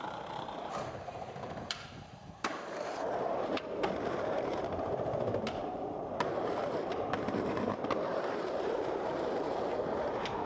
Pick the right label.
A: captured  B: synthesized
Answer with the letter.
B